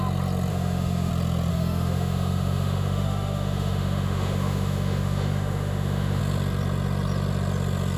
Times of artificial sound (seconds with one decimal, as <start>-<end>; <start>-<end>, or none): 0.5-1.1; 1.5-6.2